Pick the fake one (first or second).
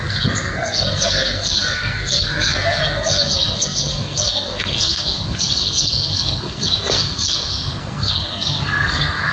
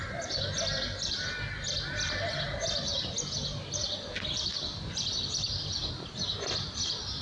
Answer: first